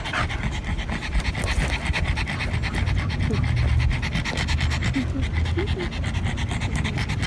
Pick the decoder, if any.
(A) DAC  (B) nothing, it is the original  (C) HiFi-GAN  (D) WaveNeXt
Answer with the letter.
B